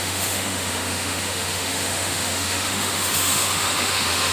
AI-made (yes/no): yes